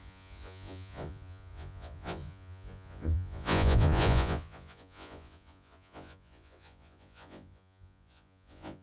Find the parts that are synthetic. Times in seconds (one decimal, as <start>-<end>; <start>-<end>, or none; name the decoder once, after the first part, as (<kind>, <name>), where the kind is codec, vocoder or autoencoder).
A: 0.0-8.8 (vocoder, Vocos)